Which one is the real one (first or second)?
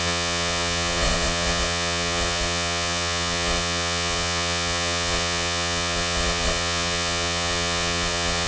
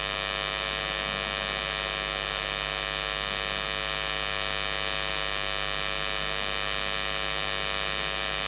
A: second